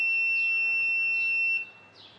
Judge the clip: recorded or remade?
recorded